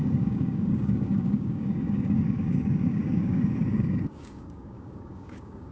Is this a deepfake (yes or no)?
yes